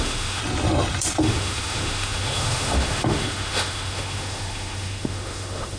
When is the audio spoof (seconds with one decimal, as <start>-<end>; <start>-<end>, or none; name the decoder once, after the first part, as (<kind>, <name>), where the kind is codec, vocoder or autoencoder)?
0.0-0.4 (autoencoder, DAC-VAE); 1.2-5.8